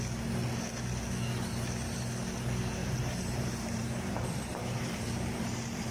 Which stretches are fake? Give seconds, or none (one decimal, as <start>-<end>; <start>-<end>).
2.8-5.9